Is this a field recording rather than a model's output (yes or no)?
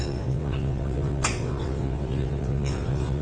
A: no